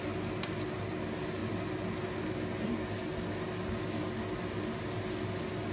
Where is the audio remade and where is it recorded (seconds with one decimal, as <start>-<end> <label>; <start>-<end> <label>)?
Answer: 0.0-5.7 recorded